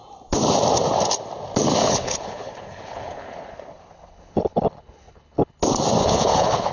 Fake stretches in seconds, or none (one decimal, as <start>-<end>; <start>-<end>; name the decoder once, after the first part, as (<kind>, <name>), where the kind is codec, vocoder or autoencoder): 1.8-5.6 (codec, HILCodec); 6.0-6.7